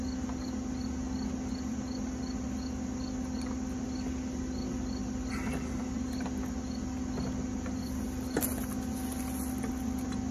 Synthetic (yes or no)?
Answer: no